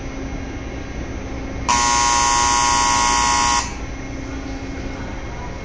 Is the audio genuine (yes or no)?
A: yes